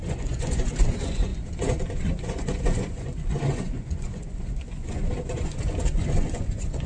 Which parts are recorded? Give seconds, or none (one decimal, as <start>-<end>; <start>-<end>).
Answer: none